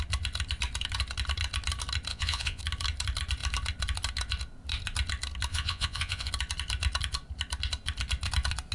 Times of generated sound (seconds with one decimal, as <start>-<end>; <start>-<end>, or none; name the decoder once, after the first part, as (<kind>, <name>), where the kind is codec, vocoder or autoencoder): 2.1-2.6 (vocoder, Vocos); 5.5-6.3